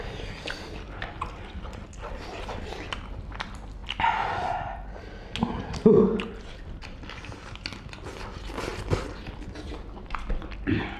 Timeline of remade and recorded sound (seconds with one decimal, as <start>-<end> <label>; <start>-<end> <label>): 0.0-11.0 recorded